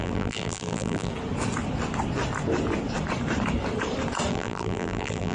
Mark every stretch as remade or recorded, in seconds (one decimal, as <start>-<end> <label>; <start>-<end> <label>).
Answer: 0.0-1.1 remade; 1.1-4.3 recorded; 4.3-5.3 remade

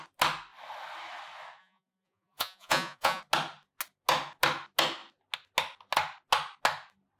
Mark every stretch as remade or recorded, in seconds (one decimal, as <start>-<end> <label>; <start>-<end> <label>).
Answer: 0.0-1.6 recorded; 1.6-3.2 remade; 3.2-7.2 recorded

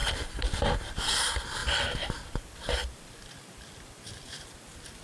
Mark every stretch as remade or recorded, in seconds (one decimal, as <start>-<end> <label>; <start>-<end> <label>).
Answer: 0.0-0.9 remade; 0.9-5.0 recorded

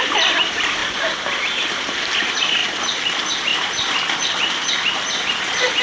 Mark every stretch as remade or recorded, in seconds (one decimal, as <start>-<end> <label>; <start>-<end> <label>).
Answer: 0.0-5.8 recorded

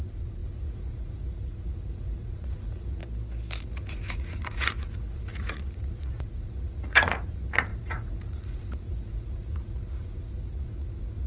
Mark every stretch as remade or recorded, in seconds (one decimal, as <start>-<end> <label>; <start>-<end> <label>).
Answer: 0.0-3.0 remade; 3.0-3.6 recorded; 3.6-11.3 remade

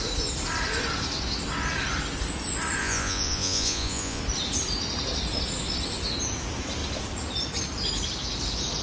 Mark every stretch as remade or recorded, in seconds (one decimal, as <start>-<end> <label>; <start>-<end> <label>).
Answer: 0.0-2.8 recorded; 2.8-4.2 remade; 4.2-8.8 recorded

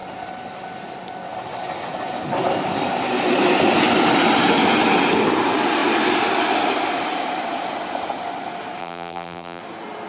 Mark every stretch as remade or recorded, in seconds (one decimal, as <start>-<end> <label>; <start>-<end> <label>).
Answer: 0.0-8.8 recorded; 8.8-9.6 remade; 9.6-10.1 recorded

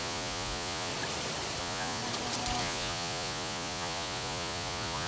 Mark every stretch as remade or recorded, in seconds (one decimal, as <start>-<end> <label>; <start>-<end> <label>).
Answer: 0.0-0.9 remade; 0.9-1.6 recorded; 1.6-2.0 remade; 2.0-2.6 recorded; 2.6-5.1 remade